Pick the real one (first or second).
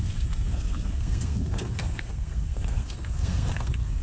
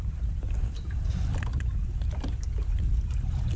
second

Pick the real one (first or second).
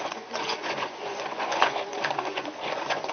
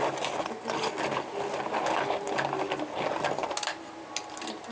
second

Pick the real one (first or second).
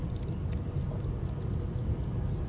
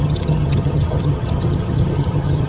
first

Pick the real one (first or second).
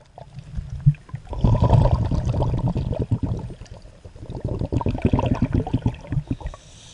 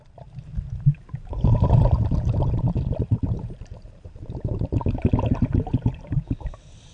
first